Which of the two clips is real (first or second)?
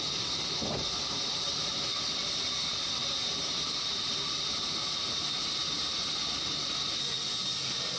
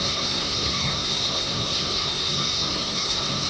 first